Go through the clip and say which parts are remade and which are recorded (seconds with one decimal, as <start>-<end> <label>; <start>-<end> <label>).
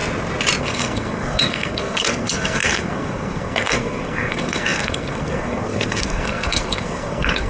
0.0-0.6 recorded; 0.6-7.5 remade